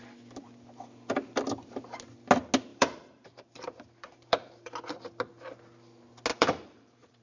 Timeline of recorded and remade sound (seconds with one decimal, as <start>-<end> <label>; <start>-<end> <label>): 0.0-2.7 recorded; 2.7-4.7 remade; 4.7-6.3 recorded; 6.3-7.2 remade